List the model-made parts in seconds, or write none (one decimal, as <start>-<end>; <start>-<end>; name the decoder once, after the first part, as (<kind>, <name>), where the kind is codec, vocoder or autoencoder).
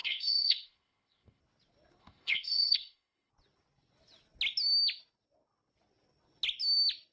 0.0-1.4 (codec, ZipCodec); 2.0-3.3